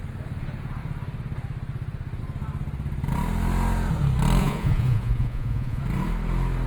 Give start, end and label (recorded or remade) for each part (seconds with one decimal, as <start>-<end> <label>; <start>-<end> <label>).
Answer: 0.0-4.4 recorded; 4.4-5.8 remade; 5.8-6.7 recorded

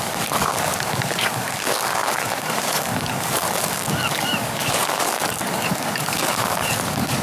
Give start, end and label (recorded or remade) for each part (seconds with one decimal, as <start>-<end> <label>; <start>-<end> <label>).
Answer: 0.0-7.2 remade